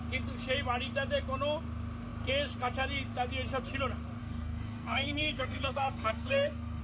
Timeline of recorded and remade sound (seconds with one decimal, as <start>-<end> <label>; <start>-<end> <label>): 0.0-4.2 recorded; 4.2-6.8 remade